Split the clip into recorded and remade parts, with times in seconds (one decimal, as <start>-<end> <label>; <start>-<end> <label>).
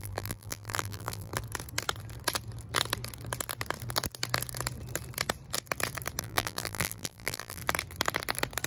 0.0-1.3 remade; 1.3-6.2 recorded; 6.2-7.6 remade; 7.6-8.7 recorded